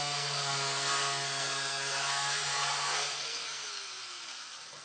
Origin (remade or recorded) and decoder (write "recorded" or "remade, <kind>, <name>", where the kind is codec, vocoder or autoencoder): remade, codec, SNAC